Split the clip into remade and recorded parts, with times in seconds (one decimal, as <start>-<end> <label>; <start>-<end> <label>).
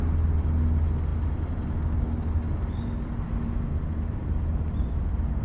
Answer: 0.0-5.4 recorded